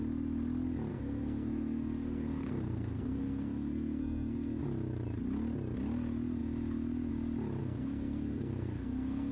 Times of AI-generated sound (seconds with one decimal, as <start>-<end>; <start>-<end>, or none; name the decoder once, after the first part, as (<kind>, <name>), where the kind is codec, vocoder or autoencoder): 0.9-4.6 (codec, SNAC); 7.6-9.3